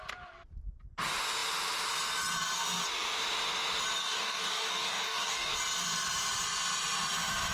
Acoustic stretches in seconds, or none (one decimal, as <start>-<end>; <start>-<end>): 0.0-4.0; 5.5-7.5